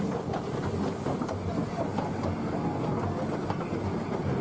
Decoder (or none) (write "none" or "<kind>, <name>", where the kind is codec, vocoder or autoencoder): none